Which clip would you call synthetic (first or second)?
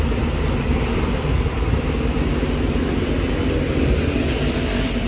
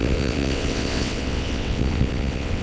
second